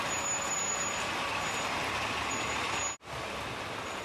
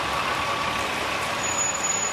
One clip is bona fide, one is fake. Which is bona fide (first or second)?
first